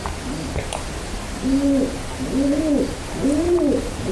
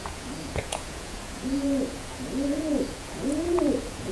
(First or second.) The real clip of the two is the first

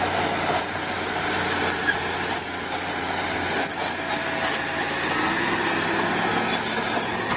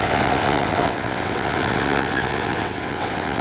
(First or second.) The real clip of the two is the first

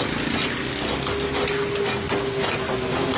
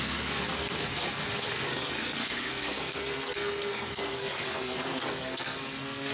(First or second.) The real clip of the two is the first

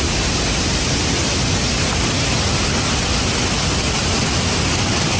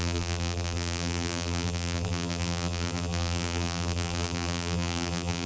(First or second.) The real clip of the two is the first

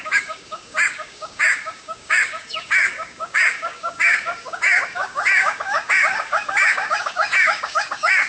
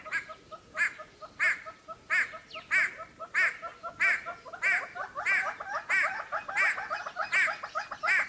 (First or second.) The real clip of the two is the second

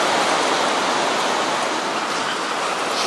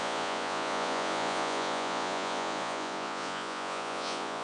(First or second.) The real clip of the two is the first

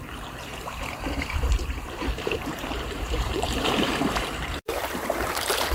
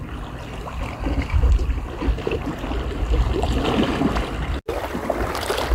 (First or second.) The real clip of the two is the second